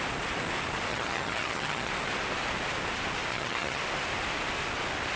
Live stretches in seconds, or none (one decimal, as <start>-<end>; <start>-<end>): 0.0-0.9; 1.9-3.3; 3.8-5.2